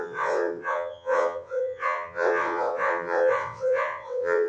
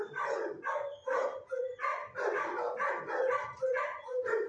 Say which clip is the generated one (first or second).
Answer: first